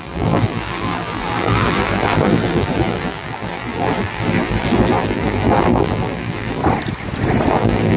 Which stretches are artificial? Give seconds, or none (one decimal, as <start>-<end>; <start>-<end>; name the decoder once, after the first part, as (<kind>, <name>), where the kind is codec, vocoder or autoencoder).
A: 0.0-6.6 (vocoder, BigVGAN v2); 7.5-8.0